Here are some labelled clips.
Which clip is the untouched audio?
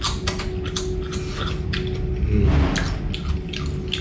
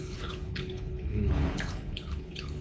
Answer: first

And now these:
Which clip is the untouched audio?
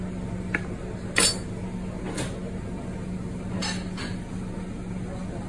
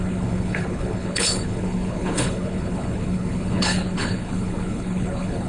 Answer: first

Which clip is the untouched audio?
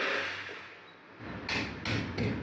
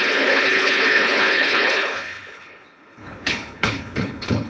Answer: first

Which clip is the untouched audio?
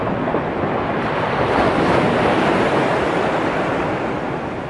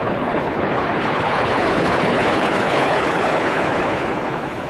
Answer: first